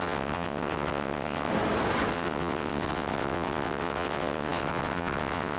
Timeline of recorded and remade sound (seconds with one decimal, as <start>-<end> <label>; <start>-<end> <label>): 0.0-1.5 remade; 1.5-2.1 recorded; 2.1-5.6 remade

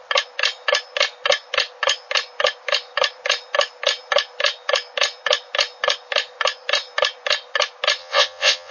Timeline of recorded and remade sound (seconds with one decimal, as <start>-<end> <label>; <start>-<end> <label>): 0.0-8.0 recorded; 8.0-8.7 remade